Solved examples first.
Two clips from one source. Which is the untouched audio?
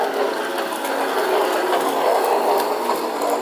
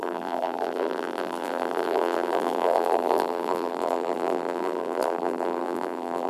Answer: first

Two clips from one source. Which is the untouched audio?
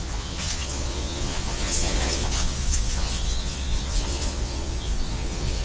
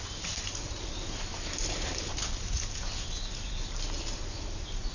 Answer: second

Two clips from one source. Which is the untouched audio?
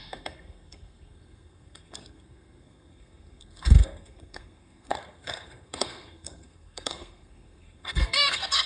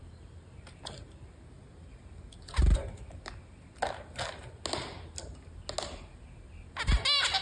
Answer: second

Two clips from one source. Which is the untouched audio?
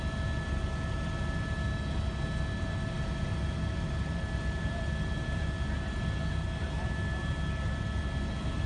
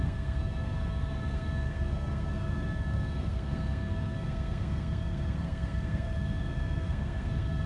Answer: first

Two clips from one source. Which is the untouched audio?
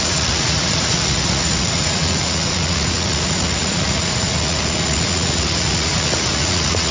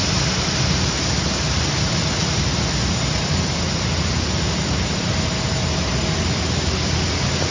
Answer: second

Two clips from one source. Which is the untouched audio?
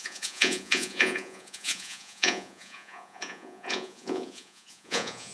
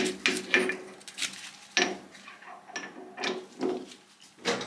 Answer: second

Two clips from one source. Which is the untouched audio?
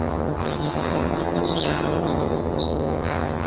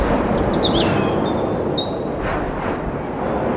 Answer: second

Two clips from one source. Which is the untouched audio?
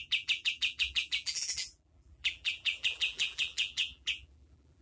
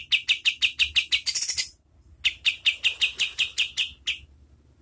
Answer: second